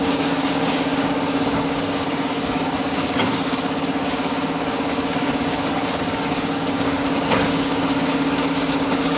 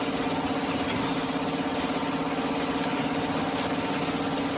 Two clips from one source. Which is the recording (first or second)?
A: second